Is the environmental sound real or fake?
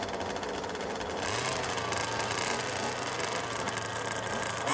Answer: real